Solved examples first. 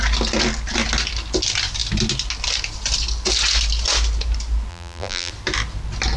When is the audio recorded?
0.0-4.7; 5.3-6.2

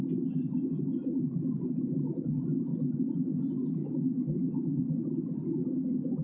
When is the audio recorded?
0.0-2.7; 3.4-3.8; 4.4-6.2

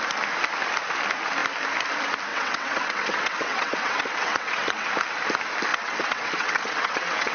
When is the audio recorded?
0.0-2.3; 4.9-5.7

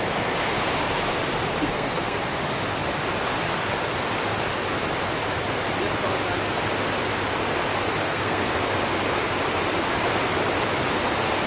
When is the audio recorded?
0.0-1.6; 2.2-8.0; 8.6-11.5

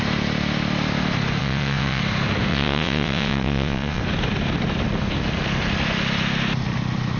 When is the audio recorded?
0.0-1.4; 2.0-2.5; 4.0-7.2